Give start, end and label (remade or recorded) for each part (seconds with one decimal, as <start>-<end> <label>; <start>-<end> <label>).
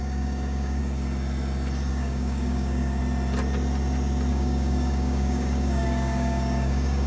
0.0-0.8 remade; 0.8-1.9 recorded; 1.9-3.0 remade; 3.0-4.3 recorded; 4.3-7.1 remade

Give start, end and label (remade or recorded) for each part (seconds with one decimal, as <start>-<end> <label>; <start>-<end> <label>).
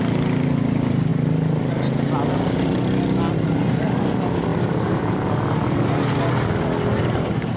0.0-7.6 recorded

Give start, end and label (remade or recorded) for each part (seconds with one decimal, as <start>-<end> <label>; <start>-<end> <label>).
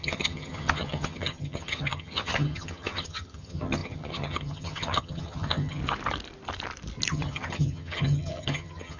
0.0-5.8 remade; 5.8-7.1 recorded; 7.1-9.0 remade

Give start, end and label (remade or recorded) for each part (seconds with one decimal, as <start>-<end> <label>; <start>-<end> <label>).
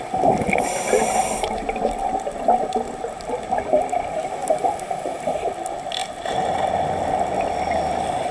0.0-8.3 recorded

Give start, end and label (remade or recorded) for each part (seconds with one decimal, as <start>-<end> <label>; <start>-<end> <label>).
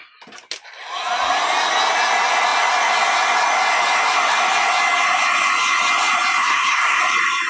0.0-6.4 recorded; 6.4-7.0 remade; 7.0-7.5 recorded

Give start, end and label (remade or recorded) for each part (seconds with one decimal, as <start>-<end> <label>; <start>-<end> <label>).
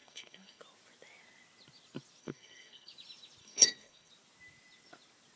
0.0-0.6 remade; 0.6-2.2 recorded; 2.2-2.9 remade; 2.9-3.4 recorded; 3.4-4.1 remade; 4.1-5.4 recorded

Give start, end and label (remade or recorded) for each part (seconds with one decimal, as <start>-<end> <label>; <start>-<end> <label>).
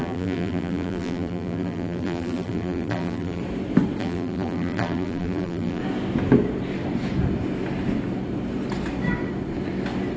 0.0-3.4 remade; 3.4-4.0 recorded; 4.0-5.8 remade; 5.8-10.2 recorded